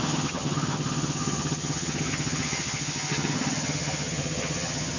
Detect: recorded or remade remade